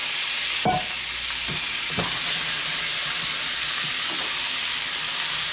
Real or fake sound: real